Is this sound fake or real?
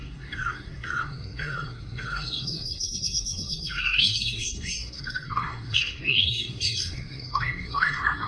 fake